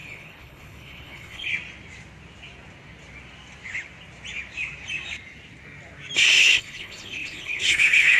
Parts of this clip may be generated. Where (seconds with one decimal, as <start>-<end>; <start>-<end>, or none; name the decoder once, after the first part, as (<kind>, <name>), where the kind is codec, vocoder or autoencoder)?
0.0-1.5 (codec, HILCodec); 6.4-8.2